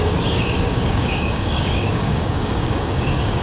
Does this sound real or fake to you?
fake